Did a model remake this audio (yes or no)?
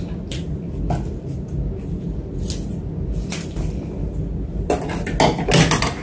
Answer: no